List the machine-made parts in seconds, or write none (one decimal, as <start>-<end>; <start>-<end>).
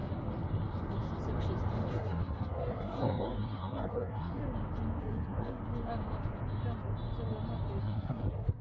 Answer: 1.9-4.4; 5.0-5.6; 7.8-8.6